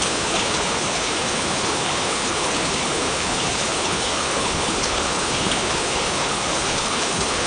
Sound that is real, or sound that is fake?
fake